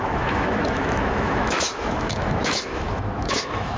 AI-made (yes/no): yes